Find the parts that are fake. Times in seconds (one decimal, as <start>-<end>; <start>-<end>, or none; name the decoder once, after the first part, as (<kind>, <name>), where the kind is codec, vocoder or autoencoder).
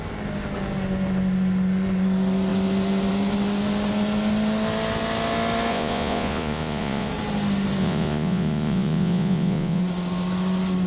5.7-7.1 (vocoder, Vocos); 7.8-9.8